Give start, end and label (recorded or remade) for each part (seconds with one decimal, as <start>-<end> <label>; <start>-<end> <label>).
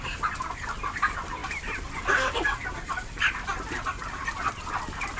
0.0-5.2 recorded